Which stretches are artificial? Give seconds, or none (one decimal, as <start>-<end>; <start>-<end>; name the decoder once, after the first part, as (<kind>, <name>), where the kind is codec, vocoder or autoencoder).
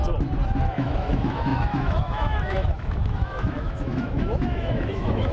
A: 0.6-5.3 (autoencoder, DAC-VAE)